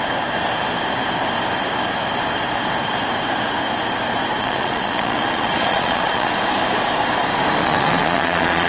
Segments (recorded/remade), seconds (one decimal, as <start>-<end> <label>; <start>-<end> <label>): 0.0-4.4 recorded; 4.4-6.3 remade; 6.3-7.6 recorded; 7.6-8.7 remade